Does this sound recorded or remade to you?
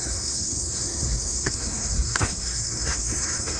remade